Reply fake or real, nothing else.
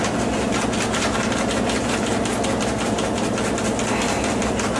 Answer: real